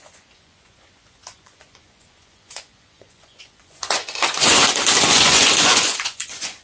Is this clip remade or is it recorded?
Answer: remade